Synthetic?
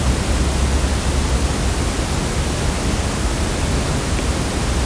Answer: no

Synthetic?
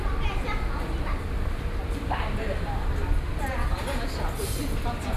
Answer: no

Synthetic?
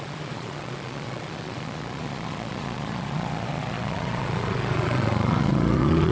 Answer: yes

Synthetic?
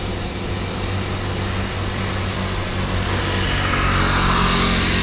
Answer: no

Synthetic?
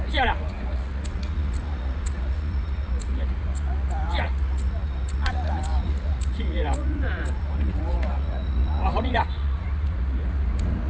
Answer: yes